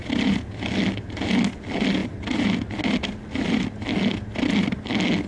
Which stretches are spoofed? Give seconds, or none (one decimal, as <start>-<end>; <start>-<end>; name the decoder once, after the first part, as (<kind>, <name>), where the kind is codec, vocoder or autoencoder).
none